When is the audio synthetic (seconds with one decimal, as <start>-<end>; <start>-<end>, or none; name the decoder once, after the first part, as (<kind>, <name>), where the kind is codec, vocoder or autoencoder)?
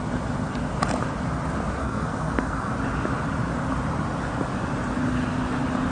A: 1.8-2.7 (codec, SNAC)